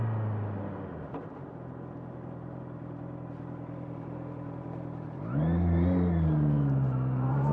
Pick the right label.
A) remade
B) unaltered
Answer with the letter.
B